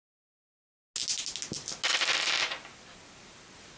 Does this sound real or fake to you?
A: real